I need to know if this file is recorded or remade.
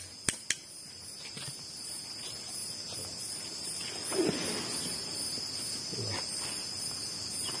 recorded